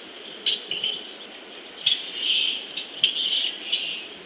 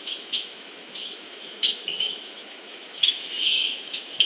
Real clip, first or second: first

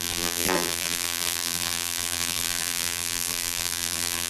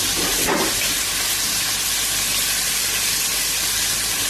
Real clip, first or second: second